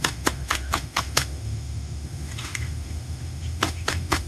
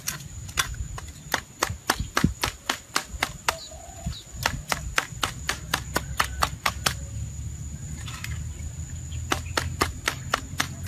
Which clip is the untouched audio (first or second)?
second